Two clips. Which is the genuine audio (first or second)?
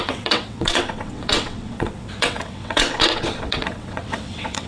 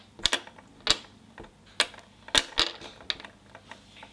second